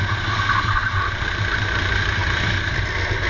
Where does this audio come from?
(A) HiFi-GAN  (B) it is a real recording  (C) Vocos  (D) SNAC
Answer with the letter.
B